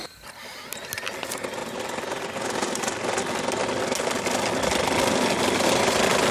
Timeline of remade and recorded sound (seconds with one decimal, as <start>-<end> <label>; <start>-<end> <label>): 0.0-6.3 recorded